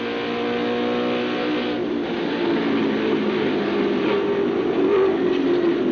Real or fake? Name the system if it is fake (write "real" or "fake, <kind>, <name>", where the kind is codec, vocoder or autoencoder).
real